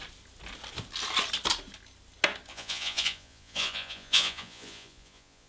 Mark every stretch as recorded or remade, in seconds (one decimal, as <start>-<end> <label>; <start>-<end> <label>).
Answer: 0.0-2.5 recorded; 2.5-5.5 remade